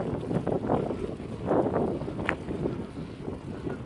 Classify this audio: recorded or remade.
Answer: recorded